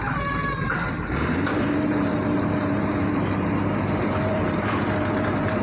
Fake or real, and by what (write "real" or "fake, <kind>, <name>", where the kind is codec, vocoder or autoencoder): fake, vocoder, BigVGAN v2